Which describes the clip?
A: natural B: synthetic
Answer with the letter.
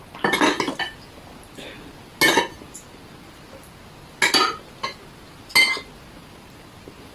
A